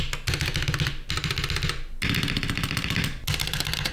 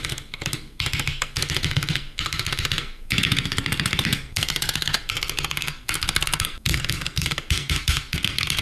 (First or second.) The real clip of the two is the first